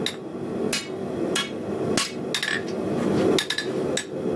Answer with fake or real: real